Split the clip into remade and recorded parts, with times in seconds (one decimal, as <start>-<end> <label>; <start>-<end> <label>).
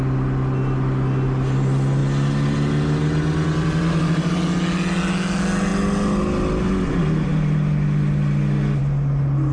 0.0-9.5 recorded